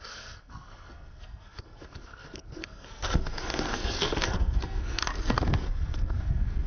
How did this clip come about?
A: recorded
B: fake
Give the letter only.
B